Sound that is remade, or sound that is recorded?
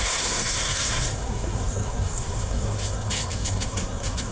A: remade